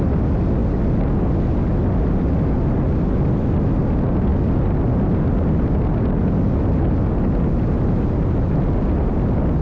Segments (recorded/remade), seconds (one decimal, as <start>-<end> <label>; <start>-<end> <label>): 0.0-9.6 recorded